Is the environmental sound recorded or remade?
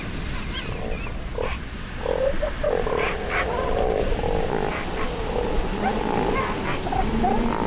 recorded